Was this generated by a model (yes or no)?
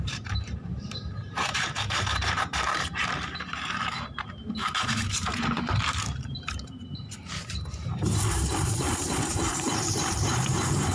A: yes